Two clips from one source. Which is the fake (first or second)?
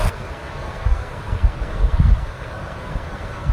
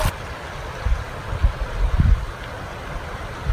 first